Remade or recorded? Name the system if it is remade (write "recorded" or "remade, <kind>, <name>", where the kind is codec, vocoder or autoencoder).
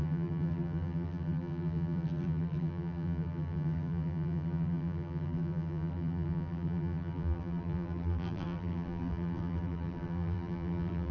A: remade, vocoder, BigVGAN v2